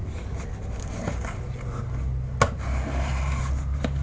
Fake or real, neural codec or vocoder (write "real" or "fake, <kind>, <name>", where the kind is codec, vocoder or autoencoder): real